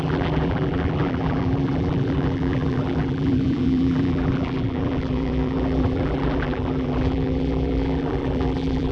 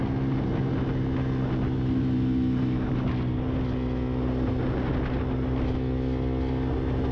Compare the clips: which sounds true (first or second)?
second